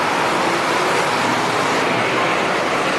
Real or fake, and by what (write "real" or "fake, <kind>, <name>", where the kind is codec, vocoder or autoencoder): real